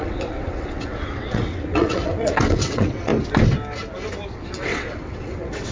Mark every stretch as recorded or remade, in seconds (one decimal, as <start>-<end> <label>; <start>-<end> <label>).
0.0-3.1 remade; 3.1-4.3 recorded; 4.3-5.7 remade